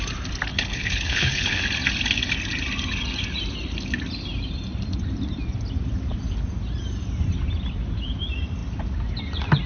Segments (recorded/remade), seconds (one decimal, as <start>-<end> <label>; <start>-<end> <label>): 0.0-0.5 recorded; 0.5-1.6 remade; 1.6-9.7 recorded